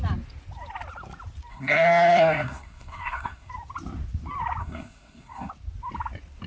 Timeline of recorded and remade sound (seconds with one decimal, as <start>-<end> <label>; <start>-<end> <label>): 0.0-1.5 recorded; 1.5-3.5 remade; 3.5-4.6 recorded; 4.6-5.5 remade; 5.5-6.5 recorded